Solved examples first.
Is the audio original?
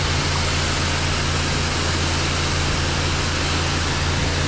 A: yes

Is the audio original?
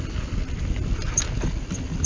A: yes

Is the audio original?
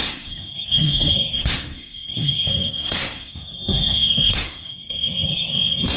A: no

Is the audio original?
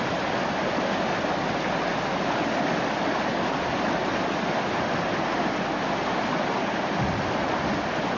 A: yes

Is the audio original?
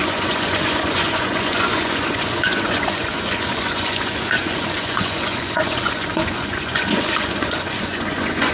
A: no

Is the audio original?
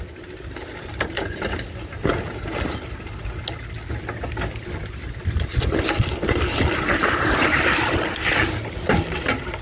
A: yes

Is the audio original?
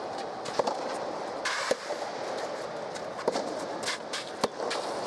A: yes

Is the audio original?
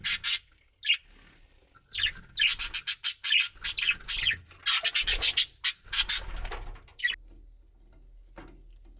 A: yes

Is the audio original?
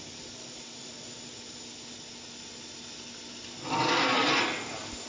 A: yes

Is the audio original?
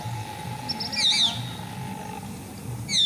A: yes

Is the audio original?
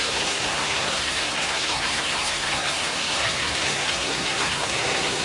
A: no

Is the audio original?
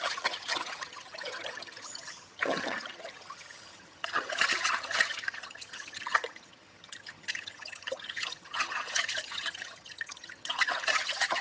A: no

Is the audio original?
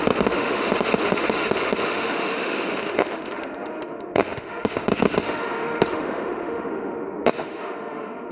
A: no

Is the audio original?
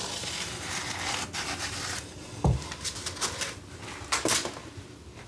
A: yes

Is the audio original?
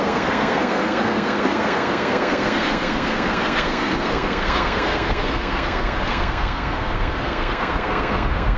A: no